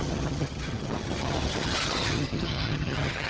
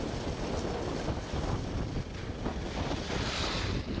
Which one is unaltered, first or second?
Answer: second